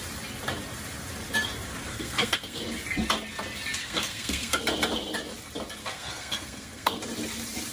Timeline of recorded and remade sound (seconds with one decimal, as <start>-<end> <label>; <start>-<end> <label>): 0.0-1.9 recorded; 1.9-2.6 remade; 2.6-3.8 recorded; 3.8-4.6 remade; 4.6-5.8 recorded; 5.8-7.0 remade; 7.0-7.7 recorded